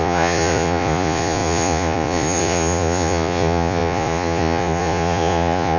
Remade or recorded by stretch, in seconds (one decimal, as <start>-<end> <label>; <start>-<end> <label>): 0.0-5.8 remade